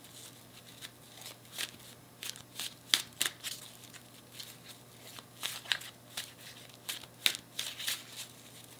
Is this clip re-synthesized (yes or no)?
no